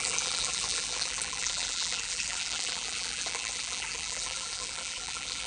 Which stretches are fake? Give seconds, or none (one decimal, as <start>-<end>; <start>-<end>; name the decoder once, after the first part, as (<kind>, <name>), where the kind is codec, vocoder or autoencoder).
0.0-5.5 (vocoder, BigVGAN v2)